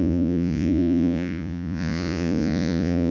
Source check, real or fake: fake